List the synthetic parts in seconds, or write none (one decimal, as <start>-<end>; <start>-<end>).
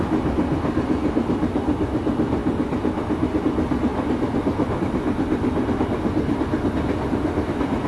none